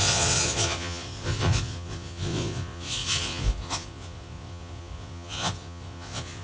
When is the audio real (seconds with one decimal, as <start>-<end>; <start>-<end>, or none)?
none